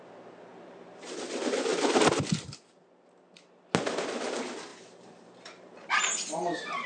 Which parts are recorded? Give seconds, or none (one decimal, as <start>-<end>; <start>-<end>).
0.0-0.5; 1.1-4.7; 6.0-6.9